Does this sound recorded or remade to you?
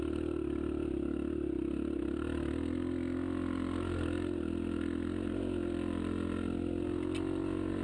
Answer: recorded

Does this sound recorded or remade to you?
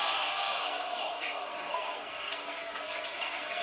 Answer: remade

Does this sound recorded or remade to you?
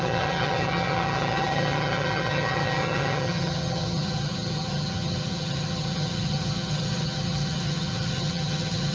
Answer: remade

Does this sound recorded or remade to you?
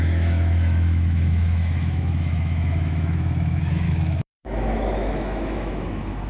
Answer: remade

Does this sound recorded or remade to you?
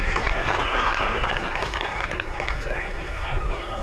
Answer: remade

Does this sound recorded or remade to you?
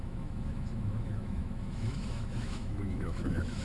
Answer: remade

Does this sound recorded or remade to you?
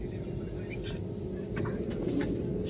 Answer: recorded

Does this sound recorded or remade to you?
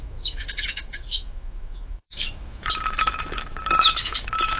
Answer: remade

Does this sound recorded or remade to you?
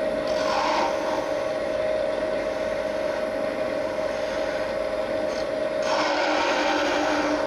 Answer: recorded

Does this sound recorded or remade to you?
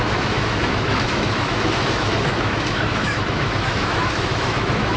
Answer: remade